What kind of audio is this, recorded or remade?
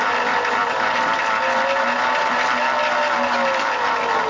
recorded